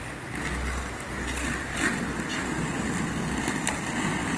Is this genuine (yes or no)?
yes